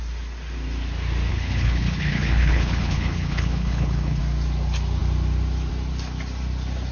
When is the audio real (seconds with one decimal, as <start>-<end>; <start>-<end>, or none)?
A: 0.0-1.3; 4.2-6.9